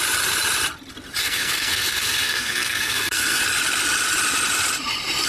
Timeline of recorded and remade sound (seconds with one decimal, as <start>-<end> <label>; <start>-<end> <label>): 0.0-1.2 recorded; 1.2-3.4 remade; 3.4-5.3 recorded